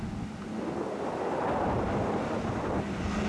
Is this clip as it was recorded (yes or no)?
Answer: yes